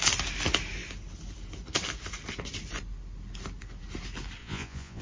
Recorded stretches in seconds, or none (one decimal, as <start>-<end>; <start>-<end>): 0.0-4.4